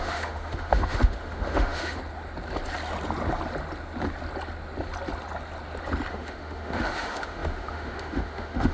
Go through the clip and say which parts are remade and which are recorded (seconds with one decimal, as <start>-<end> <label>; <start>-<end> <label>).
0.0-2.0 remade; 2.0-6.1 recorded; 6.1-8.7 remade